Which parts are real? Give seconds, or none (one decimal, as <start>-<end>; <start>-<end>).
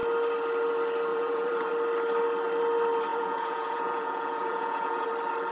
0.0-1.1; 1.7-3.1; 5.1-5.5